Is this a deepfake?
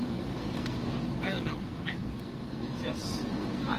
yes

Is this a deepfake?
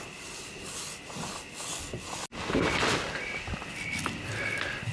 no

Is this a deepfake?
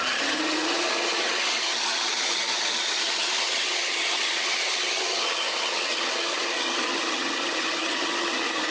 yes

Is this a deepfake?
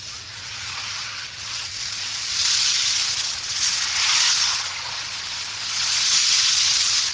yes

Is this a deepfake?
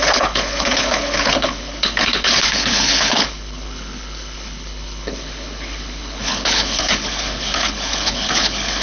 yes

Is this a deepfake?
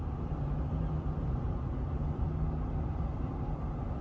no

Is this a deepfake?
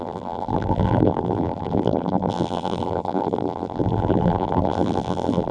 yes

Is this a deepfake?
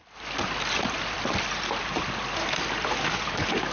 no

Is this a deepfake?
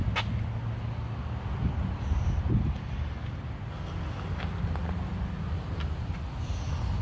no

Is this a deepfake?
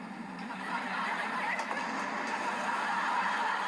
no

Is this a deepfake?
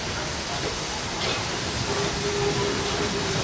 no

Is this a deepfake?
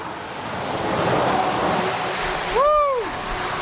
no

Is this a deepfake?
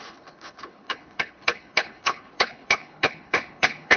yes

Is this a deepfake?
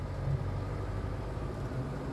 no